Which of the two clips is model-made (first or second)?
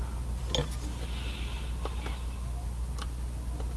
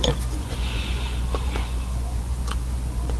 second